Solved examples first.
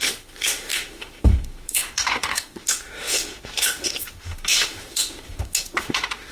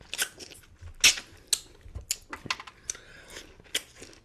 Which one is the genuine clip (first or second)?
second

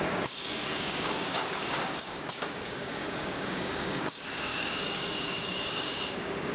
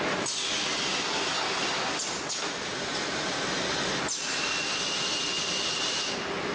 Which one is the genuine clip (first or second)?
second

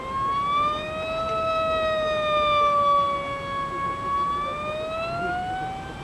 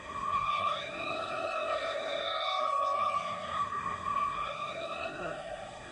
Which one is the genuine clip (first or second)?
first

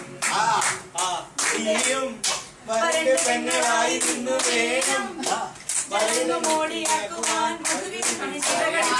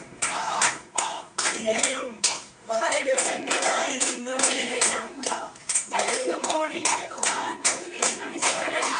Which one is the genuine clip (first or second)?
first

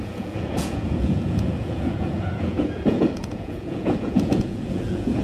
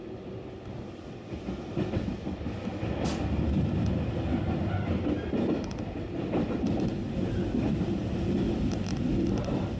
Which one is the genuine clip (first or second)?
second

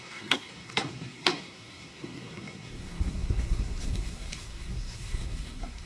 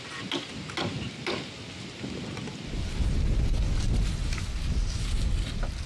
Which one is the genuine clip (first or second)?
second